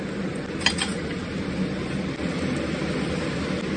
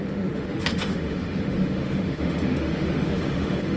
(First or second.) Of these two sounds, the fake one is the second